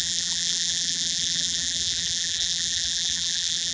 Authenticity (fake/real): fake